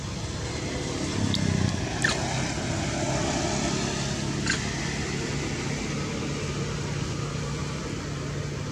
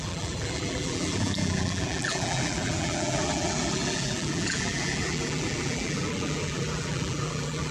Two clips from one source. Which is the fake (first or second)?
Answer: second